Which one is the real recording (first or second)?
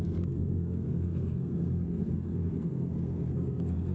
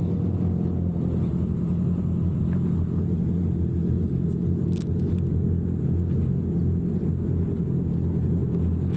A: second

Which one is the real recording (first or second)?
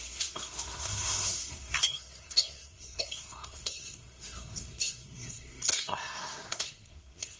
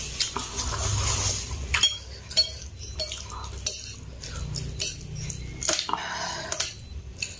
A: second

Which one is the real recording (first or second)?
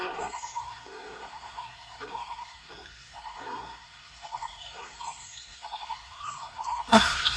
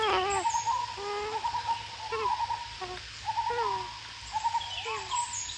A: second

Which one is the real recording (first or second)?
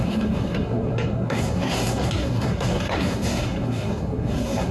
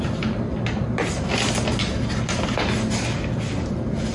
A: second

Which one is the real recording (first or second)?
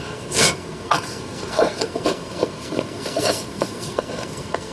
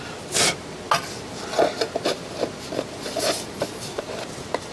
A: second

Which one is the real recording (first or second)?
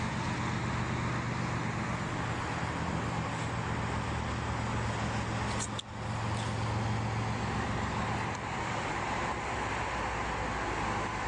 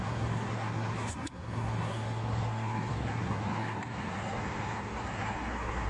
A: first